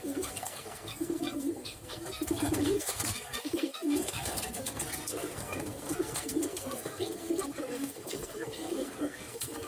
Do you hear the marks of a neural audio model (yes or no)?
yes